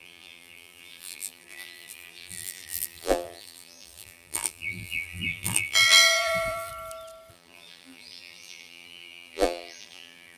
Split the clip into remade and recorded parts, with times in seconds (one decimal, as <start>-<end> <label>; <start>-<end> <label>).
0.0-6.7 remade; 6.7-7.3 recorded; 7.3-10.4 remade

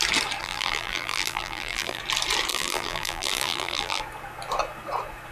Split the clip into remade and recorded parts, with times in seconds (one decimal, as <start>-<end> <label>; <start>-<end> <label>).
0.0-0.4 recorded; 0.4-2.0 remade; 2.0-2.5 recorded; 2.5-4.0 remade; 4.0-5.3 recorded

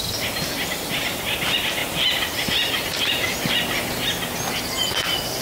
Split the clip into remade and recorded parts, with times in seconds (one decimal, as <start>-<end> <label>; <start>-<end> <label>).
0.0-5.4 recorded

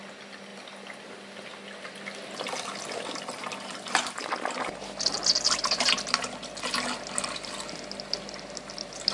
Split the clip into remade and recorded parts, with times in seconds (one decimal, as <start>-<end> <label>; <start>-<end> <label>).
0.0-9.1 recorded

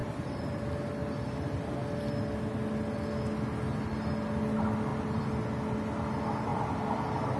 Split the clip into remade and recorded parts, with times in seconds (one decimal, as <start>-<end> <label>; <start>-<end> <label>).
0.0-0.6 remade; 0.6-4.9 recorded; 4.9-5.4 remade; 5.4-7.4 recorded

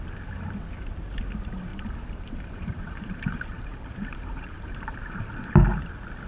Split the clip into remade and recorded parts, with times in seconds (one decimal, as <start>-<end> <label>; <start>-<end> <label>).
0.0-1.7 recorded; 1.7-5.5 remade; 5.5-6.3 recorded

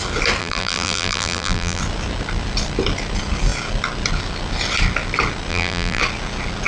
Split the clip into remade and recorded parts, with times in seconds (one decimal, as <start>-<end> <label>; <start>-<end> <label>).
0.0-0.4 recorded; 0.4-1.8 remade; 1.8-5.5 recorded; 5.5-6.0 remade; 6.0-6.7 recorded

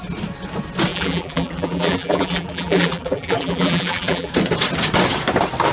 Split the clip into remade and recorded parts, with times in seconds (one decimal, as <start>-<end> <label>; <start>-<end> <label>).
0.0-0.9 recorded; 0.9-4.3 remade; 4.3-5.7 recorded